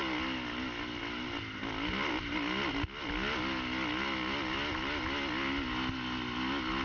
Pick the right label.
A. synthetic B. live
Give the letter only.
B